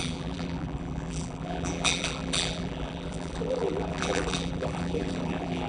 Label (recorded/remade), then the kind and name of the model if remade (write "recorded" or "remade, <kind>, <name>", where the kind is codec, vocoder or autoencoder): remade, vocoder, BigVGAN v2